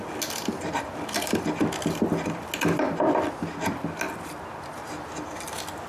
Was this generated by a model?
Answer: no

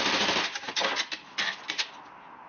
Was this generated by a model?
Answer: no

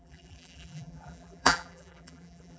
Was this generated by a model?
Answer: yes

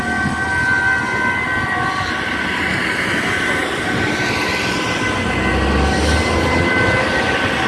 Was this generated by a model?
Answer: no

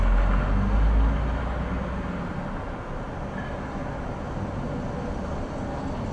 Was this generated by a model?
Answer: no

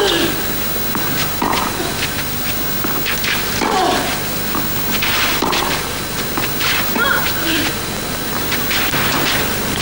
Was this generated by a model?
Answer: no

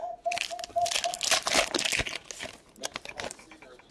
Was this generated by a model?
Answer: no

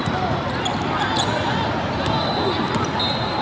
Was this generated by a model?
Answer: no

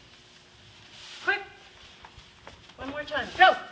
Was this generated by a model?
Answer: no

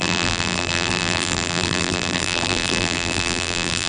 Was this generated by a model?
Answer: yes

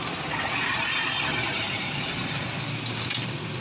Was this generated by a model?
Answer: no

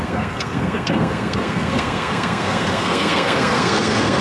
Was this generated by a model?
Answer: yes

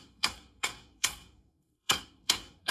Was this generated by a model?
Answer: yes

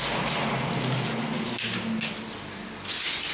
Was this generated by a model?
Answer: no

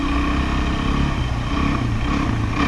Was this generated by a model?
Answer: no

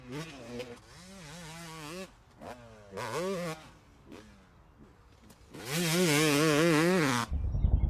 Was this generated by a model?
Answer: no